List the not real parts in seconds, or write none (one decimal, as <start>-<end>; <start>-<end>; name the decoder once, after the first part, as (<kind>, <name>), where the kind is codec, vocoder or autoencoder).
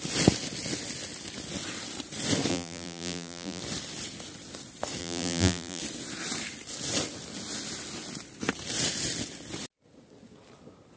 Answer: 2.5-3.6 (vocoder, BigVGAN v2); 5.0-5.8